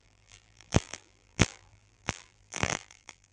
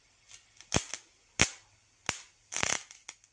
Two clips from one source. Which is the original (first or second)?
second